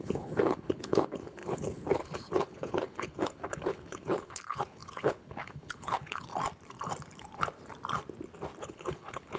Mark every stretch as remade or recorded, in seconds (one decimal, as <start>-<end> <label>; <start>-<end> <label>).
0.0-6.3 remade; 6.3-8.6 recorded; 8.6-9.4 remade